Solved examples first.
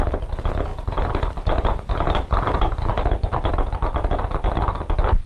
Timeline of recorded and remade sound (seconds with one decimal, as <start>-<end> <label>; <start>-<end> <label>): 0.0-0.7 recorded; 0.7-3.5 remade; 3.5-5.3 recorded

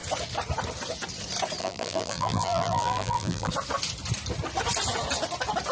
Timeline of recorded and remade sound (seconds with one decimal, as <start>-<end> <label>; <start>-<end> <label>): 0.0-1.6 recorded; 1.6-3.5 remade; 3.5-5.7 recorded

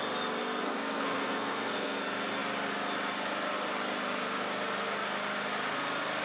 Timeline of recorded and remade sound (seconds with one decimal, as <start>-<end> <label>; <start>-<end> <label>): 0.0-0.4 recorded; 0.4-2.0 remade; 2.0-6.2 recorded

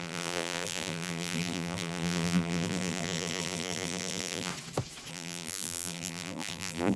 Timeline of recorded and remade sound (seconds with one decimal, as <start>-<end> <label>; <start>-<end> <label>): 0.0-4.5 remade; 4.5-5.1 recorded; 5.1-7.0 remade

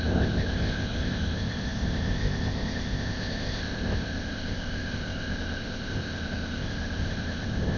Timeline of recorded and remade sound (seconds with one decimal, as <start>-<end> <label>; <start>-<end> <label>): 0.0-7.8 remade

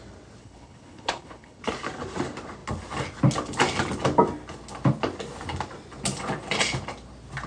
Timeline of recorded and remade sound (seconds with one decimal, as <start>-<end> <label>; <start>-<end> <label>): 0.0-0.4 recorded; 0.4-1.6 remade; 1.6-7.5 recorded

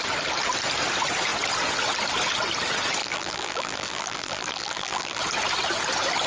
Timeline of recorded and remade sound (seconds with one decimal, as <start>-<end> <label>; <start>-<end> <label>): 0.0-3.0 recorded; 3.0-5.2 remade; 5.2-6.3 recorded